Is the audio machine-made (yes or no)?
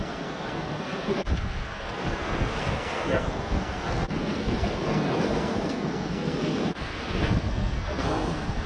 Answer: yes